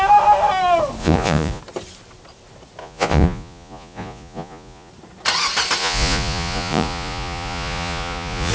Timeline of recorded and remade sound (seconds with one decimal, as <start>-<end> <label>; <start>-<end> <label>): 0.0-1.0 recorded; 1.0-1.6 remade; 1.6-2.8 recorded; 2.8-4.9 remade; 4.9-5.8 recorded; 5.8-8.5 remade